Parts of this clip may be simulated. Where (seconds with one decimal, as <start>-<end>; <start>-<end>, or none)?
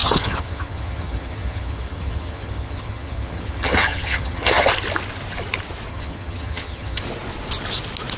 0.0-4.7; 5.9-7.0